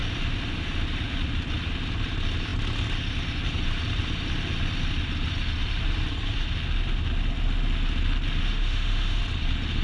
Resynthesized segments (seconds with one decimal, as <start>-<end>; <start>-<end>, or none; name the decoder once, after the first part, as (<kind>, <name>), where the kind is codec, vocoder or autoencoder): 8.4-9.2 (autoencoder, DAC-VAE)